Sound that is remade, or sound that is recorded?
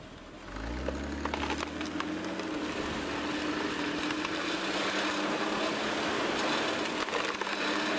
recorded